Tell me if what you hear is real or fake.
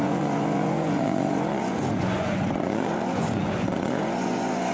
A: fake